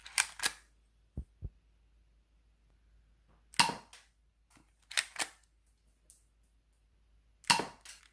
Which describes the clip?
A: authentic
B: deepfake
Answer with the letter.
A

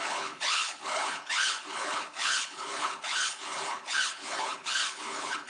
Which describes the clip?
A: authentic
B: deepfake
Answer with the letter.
B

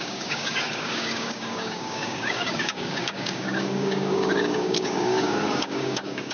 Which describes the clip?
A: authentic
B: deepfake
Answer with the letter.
B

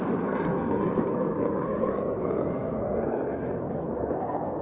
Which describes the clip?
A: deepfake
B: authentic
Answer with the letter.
A